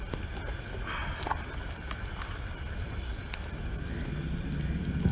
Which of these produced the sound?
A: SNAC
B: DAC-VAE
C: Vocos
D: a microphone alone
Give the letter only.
D